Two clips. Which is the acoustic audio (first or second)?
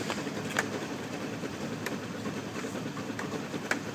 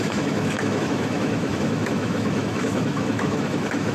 first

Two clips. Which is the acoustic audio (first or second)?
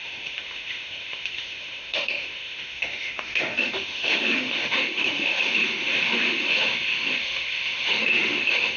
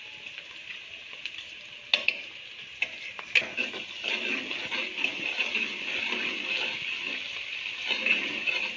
second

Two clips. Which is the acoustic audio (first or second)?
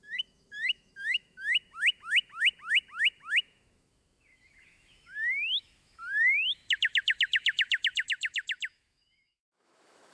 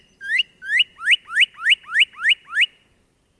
second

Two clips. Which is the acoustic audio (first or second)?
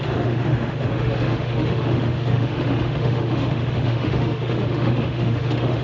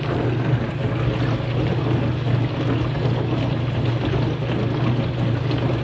second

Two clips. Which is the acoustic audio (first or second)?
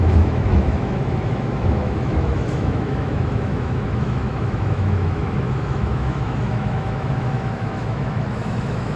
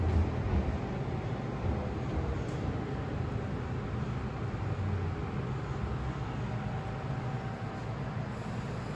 second